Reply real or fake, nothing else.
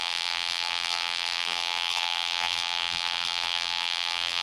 fake